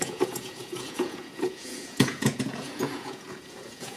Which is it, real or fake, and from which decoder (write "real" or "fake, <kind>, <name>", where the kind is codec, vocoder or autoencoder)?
fake, vocoder, Vocos